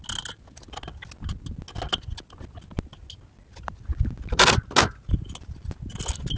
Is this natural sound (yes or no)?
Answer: yes